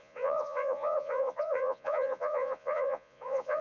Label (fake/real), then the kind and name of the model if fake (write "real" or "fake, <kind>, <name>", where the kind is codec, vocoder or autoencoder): fake, vocoder, Vocos